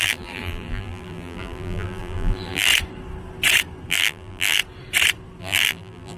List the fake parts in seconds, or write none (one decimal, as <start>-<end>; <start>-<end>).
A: 0.0-2.7; 3.9-4.6; 5.4-6.2